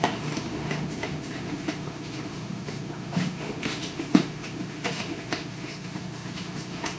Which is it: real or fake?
fake